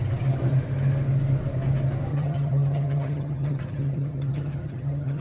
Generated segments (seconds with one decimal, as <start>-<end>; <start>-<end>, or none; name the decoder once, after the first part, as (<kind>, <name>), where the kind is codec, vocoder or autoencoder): 2.1-5.2 (vocoder, HiFi-GAN)